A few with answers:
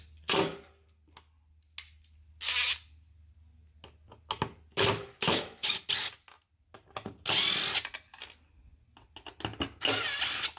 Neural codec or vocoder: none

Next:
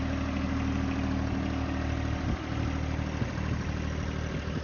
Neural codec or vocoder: none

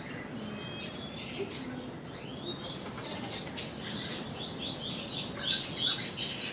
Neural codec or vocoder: none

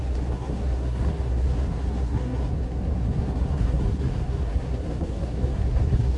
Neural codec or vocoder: codec, SNAC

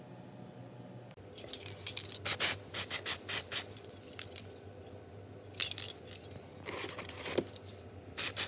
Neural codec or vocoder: none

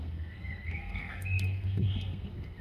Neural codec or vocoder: codec, SNAC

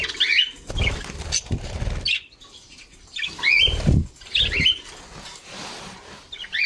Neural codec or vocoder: none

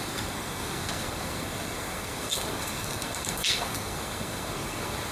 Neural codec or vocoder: codec, SNAC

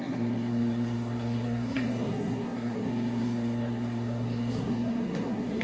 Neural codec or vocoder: codec, SNAC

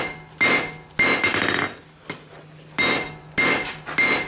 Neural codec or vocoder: none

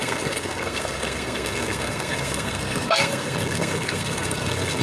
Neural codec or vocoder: codec, SNAC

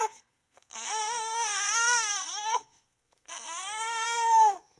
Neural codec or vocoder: codec, SNAC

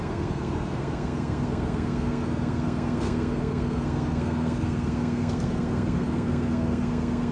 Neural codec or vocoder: codec, SNAC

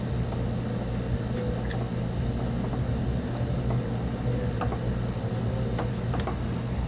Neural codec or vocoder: none